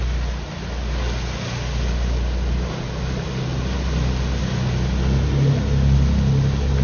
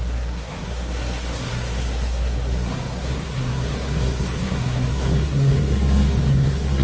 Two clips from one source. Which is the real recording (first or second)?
first